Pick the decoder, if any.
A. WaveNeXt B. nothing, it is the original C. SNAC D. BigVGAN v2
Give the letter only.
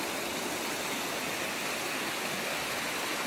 B